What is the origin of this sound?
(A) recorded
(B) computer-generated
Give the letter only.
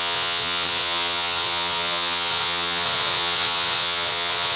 B